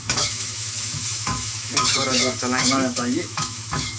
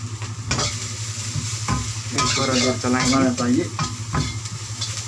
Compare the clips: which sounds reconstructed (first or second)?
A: first